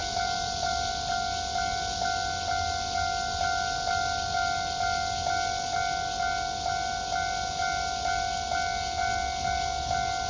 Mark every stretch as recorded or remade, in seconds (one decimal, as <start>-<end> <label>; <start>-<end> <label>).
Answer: 0.0-0.9 remade; 0.9-10.3 recorded